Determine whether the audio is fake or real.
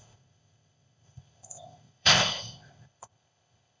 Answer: fake